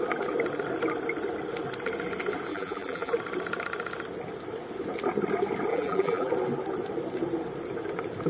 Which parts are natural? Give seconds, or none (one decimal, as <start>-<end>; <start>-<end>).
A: 0.0-2.5; 3.1-5.7; 6.3-8.3